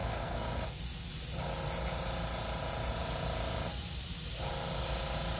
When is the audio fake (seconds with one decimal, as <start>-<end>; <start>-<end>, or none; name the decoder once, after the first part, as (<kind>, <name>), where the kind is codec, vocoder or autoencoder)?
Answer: 0.0-0.8 (codec, SNAC)